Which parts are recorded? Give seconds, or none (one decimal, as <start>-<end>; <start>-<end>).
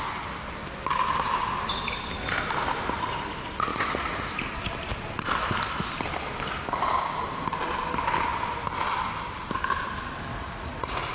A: 0.0-3.7; 4.3-10.3